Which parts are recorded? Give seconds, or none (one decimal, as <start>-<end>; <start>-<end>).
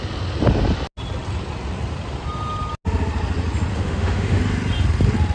0.0-3.7; 4.4-5.3